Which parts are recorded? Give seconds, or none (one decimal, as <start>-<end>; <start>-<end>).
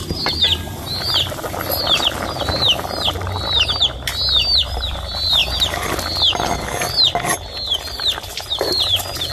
0.0-9.3